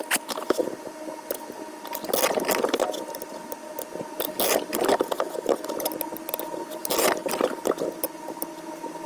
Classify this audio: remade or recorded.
recorded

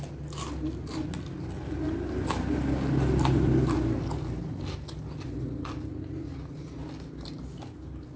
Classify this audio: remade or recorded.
recorded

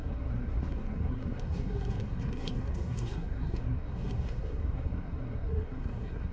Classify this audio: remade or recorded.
remade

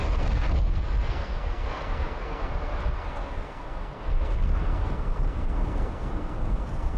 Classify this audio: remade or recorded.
remade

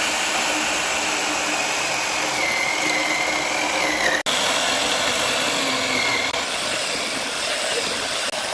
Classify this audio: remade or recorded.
recorded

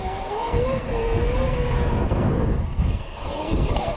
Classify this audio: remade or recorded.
remade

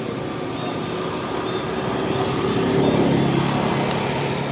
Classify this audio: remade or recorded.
recorded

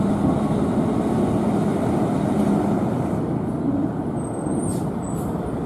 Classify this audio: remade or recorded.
recorded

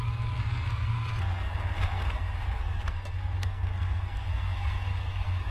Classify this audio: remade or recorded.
remade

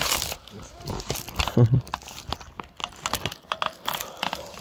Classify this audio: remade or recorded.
recorded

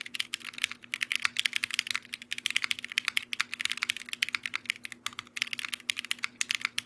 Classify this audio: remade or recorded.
recorded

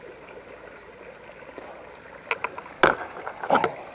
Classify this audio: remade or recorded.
recorded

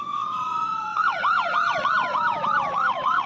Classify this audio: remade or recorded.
remade